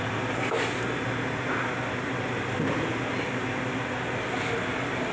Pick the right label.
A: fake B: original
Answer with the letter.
B